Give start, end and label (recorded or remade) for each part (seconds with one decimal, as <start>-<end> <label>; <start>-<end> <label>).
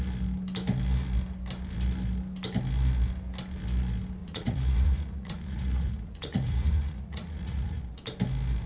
0.0-4.2 recorded; 4.2-7.8 remade; 7.8-8.7 recorded